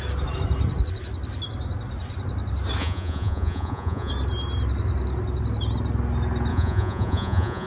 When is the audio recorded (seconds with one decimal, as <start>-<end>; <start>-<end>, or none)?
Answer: 0.0-2.8; 4.1-6.5